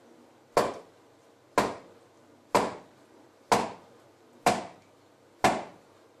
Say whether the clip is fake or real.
real